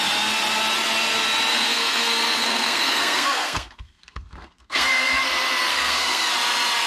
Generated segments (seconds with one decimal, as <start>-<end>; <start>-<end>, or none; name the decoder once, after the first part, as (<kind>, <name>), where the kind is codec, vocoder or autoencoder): 1.5-5.2 (codec, SNAC); 5.7-6.3